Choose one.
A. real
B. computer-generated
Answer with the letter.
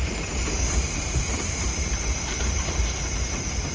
B